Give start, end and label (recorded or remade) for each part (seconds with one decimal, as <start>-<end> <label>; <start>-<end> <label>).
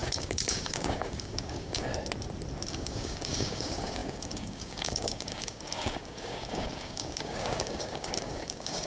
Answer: 0.0-1.9 remade; 1.9-2.7 recorded; 2.7-8.9 remade